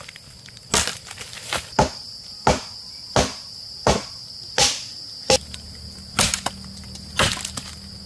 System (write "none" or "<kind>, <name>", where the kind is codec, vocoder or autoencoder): none